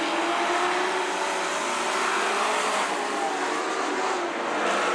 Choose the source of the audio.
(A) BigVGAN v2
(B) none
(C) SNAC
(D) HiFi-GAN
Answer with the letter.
B